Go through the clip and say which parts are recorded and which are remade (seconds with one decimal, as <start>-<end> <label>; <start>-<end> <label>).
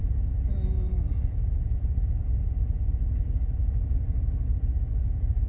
0.0-2.1 remade; 2.1-3.6 recorded; 3.6-4.4 remade; 4.4-5.5 recorded